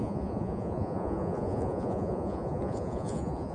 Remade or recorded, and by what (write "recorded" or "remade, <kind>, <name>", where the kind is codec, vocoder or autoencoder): remade, vocoder, Vocos